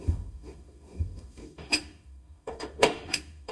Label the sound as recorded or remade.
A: remade